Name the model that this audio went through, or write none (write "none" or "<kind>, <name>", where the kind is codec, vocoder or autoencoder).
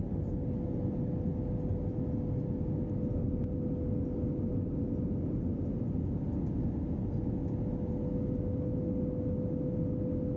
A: none